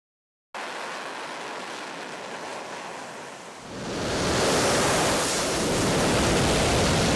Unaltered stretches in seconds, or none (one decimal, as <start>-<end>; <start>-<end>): 0.0-7.2